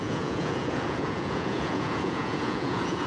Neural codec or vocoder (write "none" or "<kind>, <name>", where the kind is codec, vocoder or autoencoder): vocoder, Vocos